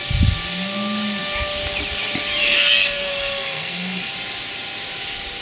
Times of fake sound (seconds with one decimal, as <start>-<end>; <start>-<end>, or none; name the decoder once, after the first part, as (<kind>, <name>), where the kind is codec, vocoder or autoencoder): 2.4-4.1 (codec, SNAC)